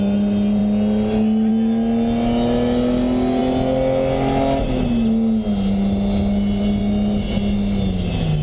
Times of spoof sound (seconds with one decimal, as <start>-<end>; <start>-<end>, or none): none

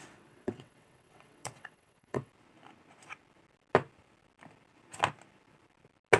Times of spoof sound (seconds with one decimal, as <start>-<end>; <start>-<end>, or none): 0.0-2.3

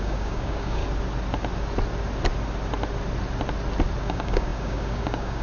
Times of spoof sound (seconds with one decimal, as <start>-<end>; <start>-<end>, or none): 0.0-0.8; 4.0-5.4

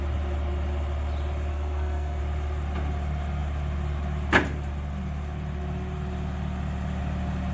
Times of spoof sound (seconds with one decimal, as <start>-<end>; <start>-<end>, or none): 1.5-2.2

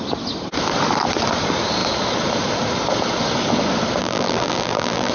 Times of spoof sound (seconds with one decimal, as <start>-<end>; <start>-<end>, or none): 4.0-5.1

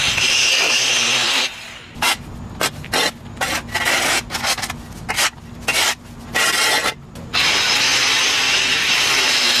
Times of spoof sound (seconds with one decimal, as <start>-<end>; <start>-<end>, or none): none

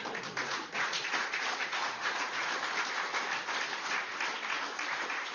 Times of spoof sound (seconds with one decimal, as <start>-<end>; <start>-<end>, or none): 0.4-2.5

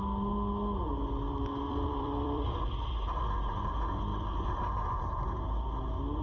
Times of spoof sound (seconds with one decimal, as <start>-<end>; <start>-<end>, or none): 1.7-2.6